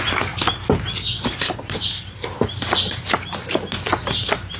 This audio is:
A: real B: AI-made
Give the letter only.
A